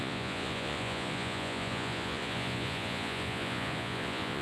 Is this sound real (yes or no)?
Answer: no